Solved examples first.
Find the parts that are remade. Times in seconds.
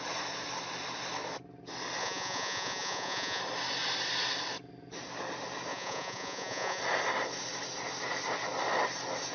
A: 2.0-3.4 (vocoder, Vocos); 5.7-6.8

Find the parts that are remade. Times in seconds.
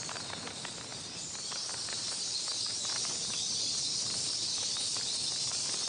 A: 0.0-0.9 (vocoder, BigVGAN v2); 1.7-5.9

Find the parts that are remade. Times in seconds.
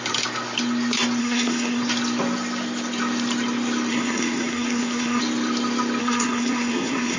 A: 1.2-1.8 (codec, SNAC); 3.9-5.2; 6.0-7.2